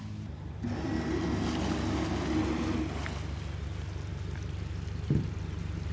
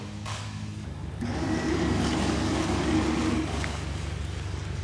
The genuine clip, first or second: first